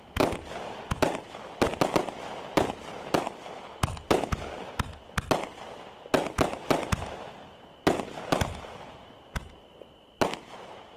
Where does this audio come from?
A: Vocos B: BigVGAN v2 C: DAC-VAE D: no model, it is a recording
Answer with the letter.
D